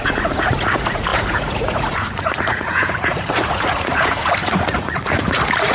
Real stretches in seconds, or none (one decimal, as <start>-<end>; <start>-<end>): none